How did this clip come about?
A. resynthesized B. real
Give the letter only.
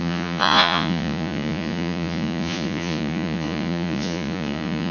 A